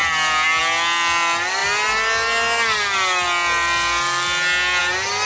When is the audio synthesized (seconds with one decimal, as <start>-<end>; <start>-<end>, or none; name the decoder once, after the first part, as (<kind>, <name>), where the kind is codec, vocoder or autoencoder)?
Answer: none